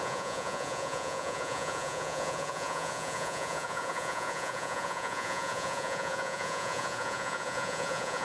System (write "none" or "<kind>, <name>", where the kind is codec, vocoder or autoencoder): vocoder, Vocos